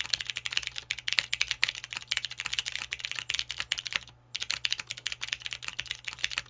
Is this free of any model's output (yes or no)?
yes